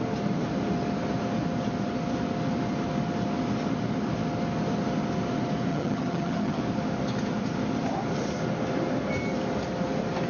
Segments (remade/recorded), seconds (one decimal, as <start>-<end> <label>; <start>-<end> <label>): 0.0-5.7 recorded; 5.7-6.6 remade; 6.6-10.3 recorded